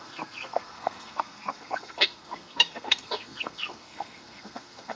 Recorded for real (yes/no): no